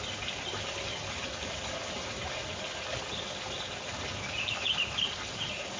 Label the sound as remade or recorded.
recorded